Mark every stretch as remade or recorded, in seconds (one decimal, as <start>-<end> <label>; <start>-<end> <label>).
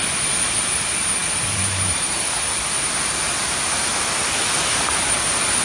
0.0-5.6 recorded